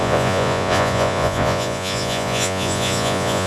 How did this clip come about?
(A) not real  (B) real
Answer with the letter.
A